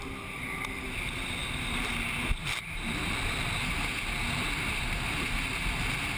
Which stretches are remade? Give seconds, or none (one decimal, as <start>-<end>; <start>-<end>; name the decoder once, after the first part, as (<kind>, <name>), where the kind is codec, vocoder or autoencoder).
1.4-1.9 (vocoder, BigVGAN v2); 2.4-3.5